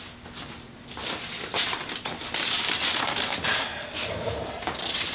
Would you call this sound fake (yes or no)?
no